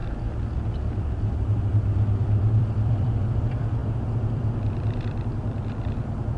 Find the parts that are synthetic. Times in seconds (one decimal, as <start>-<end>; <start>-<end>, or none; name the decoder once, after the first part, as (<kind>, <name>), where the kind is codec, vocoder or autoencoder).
2.2-6.4 (vocoder, BigVGAN v2)